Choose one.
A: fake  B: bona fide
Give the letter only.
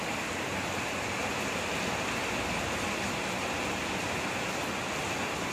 B